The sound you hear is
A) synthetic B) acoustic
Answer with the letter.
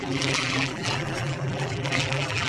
A